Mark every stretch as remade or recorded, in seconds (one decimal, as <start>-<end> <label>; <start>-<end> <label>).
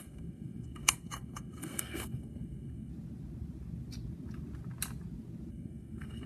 0.0-2.9 remade; 2.9-5.5 recorded; 5.5-6.3 remade